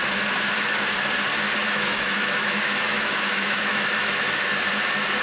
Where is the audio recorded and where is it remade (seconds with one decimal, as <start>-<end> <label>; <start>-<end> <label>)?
0.0-1.6 recorded; 1.6-4.7 remade; 4.7-5.2 recorded